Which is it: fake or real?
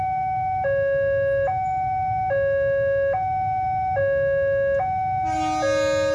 real